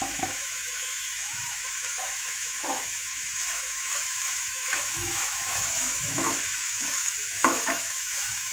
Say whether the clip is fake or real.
fake